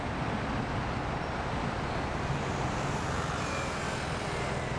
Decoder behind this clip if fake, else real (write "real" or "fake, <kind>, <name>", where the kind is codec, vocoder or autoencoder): real